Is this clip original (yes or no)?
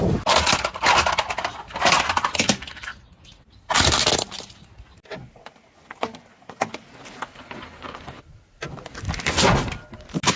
yes